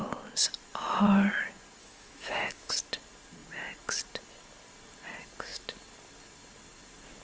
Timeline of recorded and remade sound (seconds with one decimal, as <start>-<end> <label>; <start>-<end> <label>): 0.0-1.8 recorded; 1.8-2.7 remade; 2.7-7.2 recorded